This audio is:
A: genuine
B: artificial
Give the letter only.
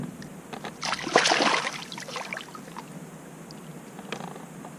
A